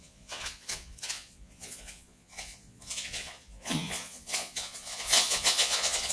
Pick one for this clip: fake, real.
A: fake